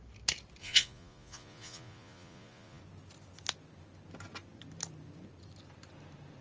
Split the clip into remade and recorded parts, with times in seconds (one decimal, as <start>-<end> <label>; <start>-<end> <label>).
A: 0.0-0.6 recorded; 0.6-2.8 remade; 2.8-6.4 recorded